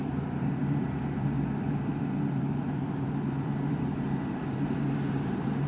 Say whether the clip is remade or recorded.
remade